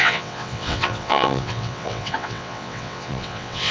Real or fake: fake